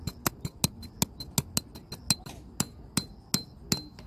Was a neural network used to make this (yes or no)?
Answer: no